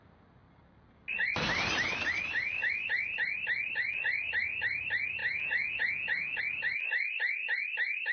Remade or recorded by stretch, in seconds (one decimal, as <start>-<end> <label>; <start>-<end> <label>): 0.0-5.2 recorded; 5.2-6.4 remade; 6.4-8.1 recorded